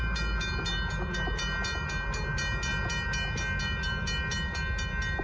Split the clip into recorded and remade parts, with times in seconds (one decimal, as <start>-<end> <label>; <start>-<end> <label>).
0.0-5.2 recorded